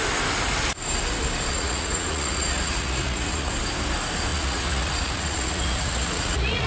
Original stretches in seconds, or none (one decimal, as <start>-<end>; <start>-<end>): 0.0-1.5; 3.5-4.3